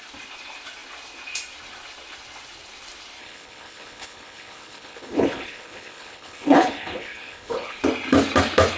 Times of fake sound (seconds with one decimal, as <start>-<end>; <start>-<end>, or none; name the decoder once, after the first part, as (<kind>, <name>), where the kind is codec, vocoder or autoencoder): 3.2-7.8 (codec, HILCodec)